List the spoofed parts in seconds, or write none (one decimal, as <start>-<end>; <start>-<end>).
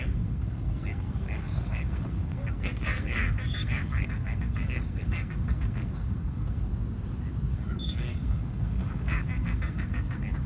0.0-6.7; 7.5-10.5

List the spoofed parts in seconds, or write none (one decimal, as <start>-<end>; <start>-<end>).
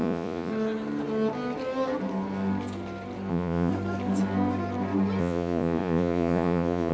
0.0-0.5; 3.3-3.7; 5.2-6.9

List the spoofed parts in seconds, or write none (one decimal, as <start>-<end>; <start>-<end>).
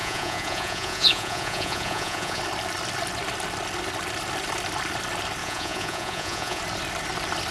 0.0-2.4; 5.4-6.6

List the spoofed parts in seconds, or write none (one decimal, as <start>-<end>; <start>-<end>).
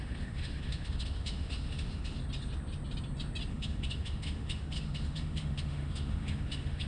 0.0-2.2; 3.5-6.9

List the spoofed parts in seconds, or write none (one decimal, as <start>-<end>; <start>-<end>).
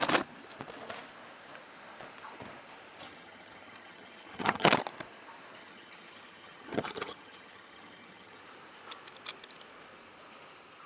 3.0-4.7; 5.6-8.4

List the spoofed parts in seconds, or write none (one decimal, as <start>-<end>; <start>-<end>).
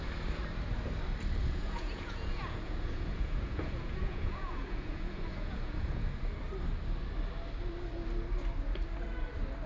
1.4-6.1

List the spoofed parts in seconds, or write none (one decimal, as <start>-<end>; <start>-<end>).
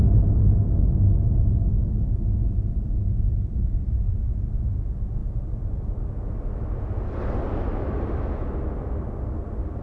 3.3-4.2